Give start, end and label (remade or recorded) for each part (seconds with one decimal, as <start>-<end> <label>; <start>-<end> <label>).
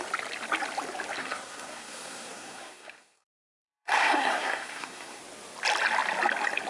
0.0-1.2 recorded; 1.2-5.2 remade; 5.2-6.7 recorded